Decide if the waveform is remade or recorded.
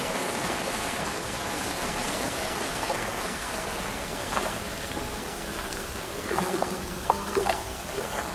remade